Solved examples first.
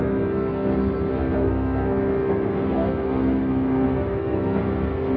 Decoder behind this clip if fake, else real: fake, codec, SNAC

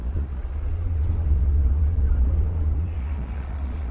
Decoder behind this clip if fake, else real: fake, vocoder, Vocos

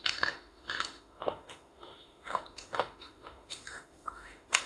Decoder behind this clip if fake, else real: fake, autoencoder, DAC-VAE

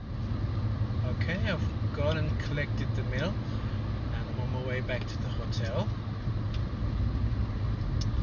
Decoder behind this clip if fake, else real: real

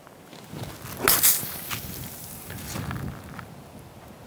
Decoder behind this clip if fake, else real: real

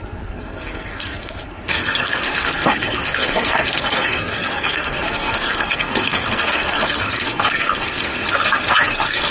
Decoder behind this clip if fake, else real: fake, codec, SNAC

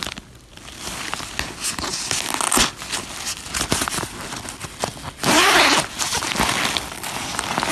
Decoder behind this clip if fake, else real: real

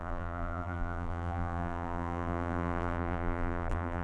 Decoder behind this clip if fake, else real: fake, vocoder, BigVGAN v2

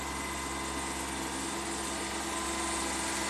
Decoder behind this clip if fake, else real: real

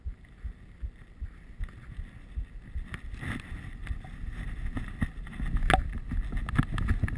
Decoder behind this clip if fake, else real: real